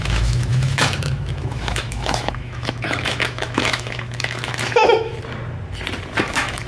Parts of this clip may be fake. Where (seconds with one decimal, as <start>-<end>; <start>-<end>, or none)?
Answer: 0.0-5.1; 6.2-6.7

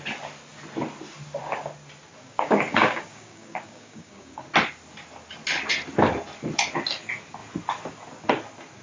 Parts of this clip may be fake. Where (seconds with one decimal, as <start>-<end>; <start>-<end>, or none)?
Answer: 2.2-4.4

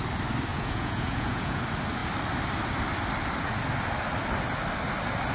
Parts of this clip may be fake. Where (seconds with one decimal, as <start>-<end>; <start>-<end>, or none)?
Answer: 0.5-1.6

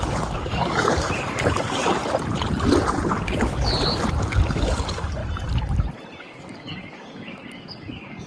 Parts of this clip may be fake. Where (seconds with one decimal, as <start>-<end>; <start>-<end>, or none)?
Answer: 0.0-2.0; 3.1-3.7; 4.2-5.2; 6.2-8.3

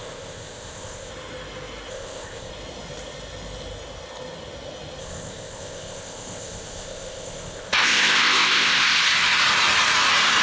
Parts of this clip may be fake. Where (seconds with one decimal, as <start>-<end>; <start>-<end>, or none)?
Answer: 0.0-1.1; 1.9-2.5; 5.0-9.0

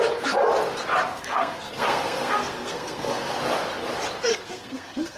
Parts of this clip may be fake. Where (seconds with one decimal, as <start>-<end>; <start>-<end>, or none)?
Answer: 1.1-3.4; 4.3-5.2

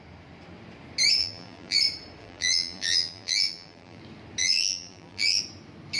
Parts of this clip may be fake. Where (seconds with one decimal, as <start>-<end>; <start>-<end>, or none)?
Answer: 1.2-1.8; 2.2-4.0; 4.4-5.4